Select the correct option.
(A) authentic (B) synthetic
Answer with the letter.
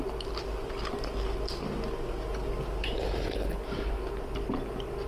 A